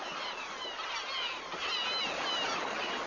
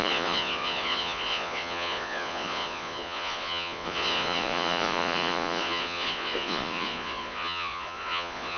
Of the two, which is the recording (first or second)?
first